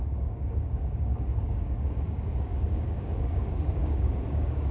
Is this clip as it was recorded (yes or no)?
no